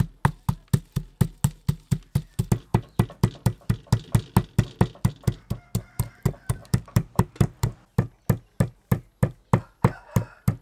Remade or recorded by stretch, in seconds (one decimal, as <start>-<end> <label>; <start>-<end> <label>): 0.0-6.6 recorded; 6.6-7.2 remade; 7.2-10.6 recorded